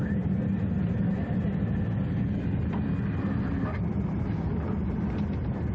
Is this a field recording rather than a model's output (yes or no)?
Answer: yes